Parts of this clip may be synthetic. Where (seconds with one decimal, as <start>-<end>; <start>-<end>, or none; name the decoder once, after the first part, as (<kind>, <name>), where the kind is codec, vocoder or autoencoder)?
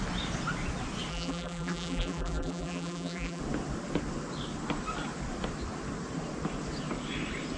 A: 1.1-3.4 (vocoder, BigVGAN v2)